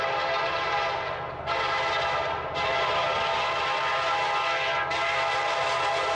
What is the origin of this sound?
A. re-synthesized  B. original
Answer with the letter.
B